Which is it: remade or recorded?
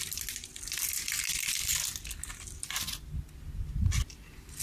recorded